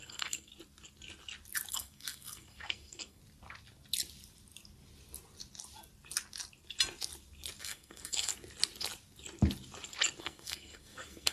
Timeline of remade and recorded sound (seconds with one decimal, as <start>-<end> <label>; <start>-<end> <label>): 0.0-0.5 remade; 0.5-1.7 recorded; 1.7-3.2 remade; 3.2-7.6 recorded; 7.6-8.3 remade; 8.3-10.2 recorded; 10.2-11.3 remade